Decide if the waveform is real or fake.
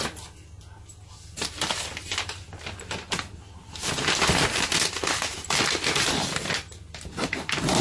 real